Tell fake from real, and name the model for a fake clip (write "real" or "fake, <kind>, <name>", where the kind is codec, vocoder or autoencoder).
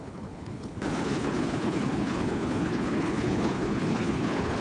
fake, codec, HILCodec